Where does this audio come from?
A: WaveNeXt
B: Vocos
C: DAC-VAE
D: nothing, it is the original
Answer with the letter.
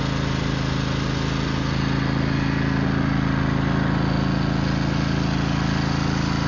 D